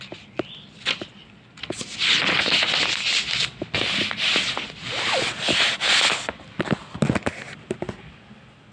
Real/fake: real